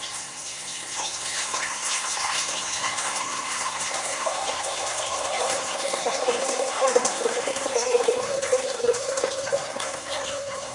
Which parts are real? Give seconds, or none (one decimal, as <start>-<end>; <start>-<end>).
none